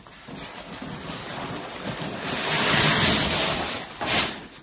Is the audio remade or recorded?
recorded